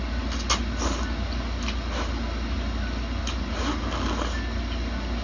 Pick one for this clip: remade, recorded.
recorded